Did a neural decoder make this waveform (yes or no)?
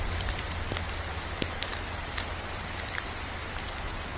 yes